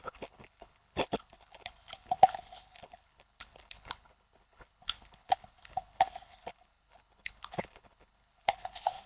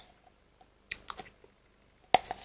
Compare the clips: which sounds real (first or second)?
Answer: second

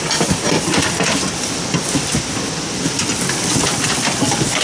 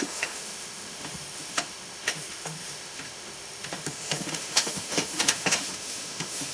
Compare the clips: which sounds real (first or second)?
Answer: first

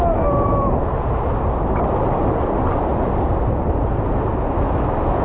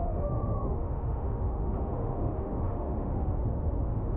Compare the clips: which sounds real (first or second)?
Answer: first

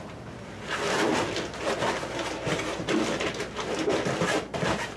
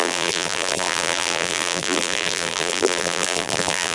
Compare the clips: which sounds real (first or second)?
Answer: first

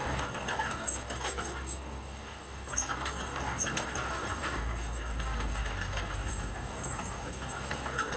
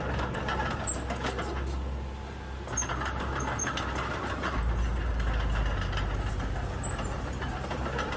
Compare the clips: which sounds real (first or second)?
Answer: second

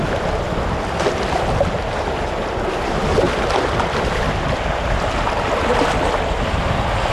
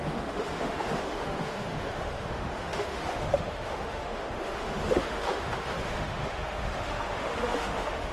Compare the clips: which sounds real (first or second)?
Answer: first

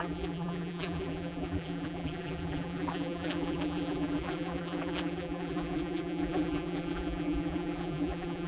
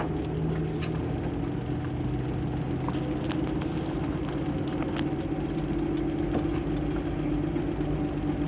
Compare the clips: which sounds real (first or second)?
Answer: second